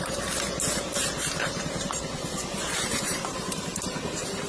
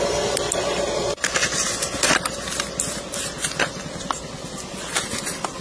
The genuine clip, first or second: second